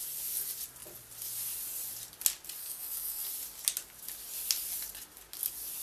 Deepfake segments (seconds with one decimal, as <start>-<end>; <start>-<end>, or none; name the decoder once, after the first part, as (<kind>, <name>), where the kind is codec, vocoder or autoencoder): 2.6-3.3 (codec, SNAC)